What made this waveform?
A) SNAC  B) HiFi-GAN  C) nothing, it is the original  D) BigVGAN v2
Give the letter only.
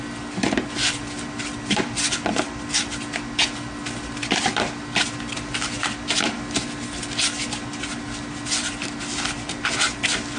C